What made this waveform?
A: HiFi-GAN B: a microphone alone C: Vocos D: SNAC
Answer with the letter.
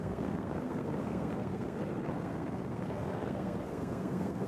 D